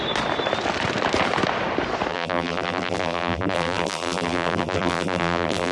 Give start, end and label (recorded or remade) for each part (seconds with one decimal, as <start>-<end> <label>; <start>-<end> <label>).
0.0-2.1 recorded; 2.1-5.7 remade

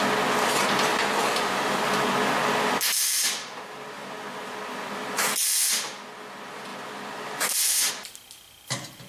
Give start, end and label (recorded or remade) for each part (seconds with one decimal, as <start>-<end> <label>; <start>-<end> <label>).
0.0-0.9 recorded; 0.9-1.8 remade; 1.8-6.7 recorded; 6.7-7.9 remade; 7.9-9.1 recorded

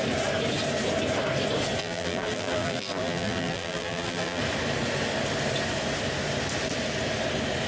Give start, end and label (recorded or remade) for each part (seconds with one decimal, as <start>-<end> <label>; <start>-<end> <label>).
0.0-1.8 recorded; 1.8-4.4 remade; 4.4-7.7 recorded

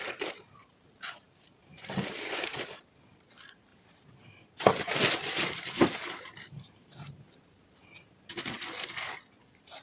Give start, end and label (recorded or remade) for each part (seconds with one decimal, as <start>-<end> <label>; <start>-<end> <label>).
0.0-0.6 recorded; 0.6-2.8 remade; 2.8-3.7 recorded; 3.7-7.2 remade; 7.2-9.8 recorded